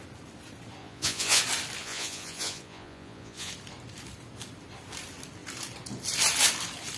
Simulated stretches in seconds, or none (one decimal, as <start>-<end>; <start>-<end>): 0.8-1.4; 1.8-3.5